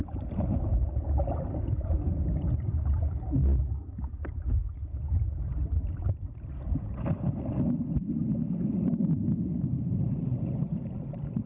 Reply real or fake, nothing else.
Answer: real